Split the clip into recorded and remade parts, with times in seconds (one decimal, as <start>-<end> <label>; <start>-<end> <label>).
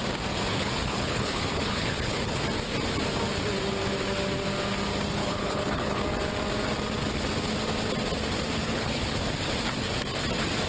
0.0-0.5 recorded; 0.5-2.4 remade; 2.4-5.2 recorded; 5.2-6.0 remade; 6.0-8.6 recorded; 8.6-9.3 remade; 9.3-10.7 recorded